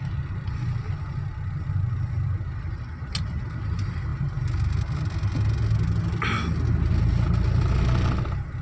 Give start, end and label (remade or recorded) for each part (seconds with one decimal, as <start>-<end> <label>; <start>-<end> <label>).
0.0-8.6 recorded